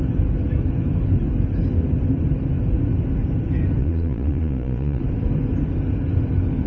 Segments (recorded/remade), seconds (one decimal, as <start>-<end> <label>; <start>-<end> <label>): 0.0-3.8 recorded; 3.8-5.0 remade; 5.0-6.7 recorded